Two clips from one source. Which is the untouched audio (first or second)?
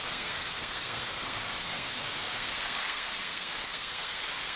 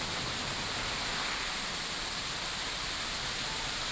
second